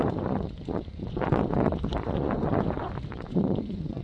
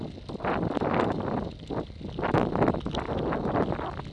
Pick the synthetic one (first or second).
first